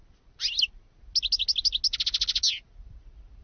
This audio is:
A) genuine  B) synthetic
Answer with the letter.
A